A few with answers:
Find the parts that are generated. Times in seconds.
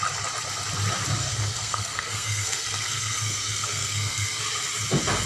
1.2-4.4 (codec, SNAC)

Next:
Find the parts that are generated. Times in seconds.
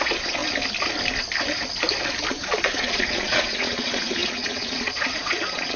0.0-0.4 (vocoder, Vocos); 2.3-5.8